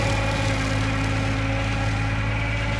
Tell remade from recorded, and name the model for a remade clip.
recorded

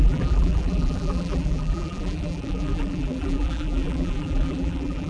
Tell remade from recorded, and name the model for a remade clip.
remade, vocoder, BigVGAN v2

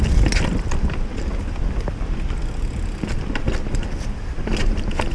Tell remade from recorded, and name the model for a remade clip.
recorded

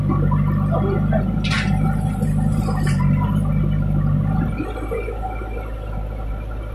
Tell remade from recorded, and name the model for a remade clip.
recorded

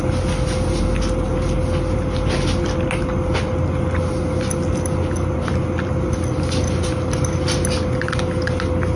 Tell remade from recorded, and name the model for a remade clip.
recorded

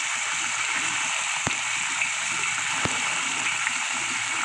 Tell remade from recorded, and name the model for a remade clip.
remade, vocoder, BigVGAN v2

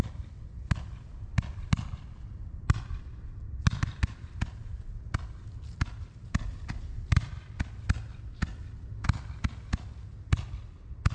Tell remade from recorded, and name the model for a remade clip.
recorded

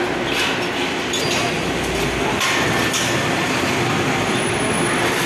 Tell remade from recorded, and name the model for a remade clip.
recorded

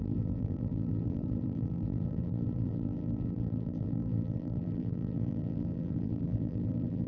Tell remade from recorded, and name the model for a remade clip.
remade, vocoder, BigVGAN v2